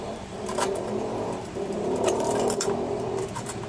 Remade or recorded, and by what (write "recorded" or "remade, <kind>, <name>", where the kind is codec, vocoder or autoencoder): remade, vocoder, BigVGAN v2